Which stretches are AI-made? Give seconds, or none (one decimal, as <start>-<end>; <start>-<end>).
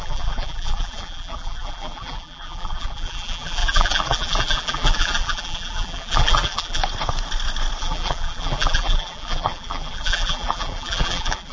0.0-6.8; 7.8-11.5